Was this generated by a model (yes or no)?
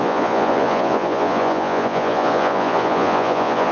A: yes